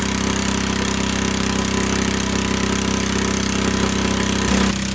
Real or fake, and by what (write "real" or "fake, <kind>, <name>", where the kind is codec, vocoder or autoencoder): real